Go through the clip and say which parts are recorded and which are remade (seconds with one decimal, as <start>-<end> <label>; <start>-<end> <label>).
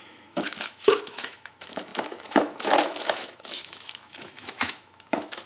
0.0-5.5 remade